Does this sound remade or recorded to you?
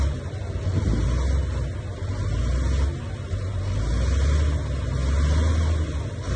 recorded